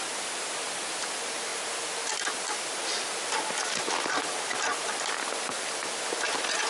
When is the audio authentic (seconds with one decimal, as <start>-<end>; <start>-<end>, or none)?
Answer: 0.0-6.7